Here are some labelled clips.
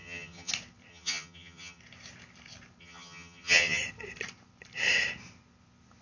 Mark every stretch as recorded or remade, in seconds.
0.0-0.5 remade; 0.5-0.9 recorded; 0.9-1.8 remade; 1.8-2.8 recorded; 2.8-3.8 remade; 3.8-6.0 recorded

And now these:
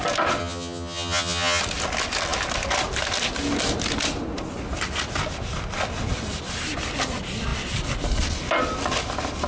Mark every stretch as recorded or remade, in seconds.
0.0-0.4 recorded; 0.4-1.6 remade; 1.6-9.5 recorded

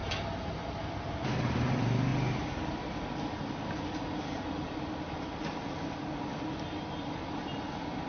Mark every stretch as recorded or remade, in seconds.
0.0-8.1 recorded

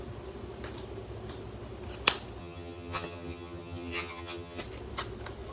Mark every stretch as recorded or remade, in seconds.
0.0-2.4 recorded; 2.4-4.6 remade; 4.6-5.5 recorded

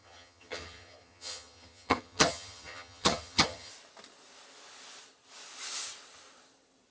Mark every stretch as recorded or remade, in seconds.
0.0-3.7 remade; 3.7-6.9 recorded

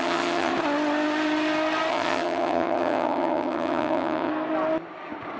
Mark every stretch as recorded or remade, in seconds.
0.0-0.5 remade; 0.5-1.9 recorded; 1.9-4.3 remade; 4.3-5.4 recorded

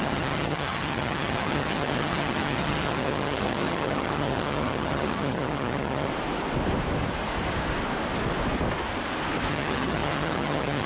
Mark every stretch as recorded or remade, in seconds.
0.0-6.1 remade; 6.1-9.5 recorded; 9.5-10.9 remade